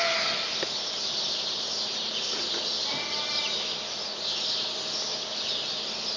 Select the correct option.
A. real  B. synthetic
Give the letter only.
A